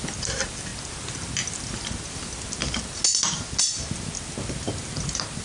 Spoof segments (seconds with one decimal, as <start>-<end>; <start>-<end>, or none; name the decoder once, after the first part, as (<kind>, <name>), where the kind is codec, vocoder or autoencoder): none